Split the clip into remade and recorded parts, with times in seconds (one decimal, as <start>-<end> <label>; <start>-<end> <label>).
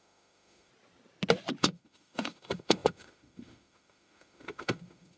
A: 0.0-0.7 remade; 0.7-1.6 recorded; 1.6-5.2 remade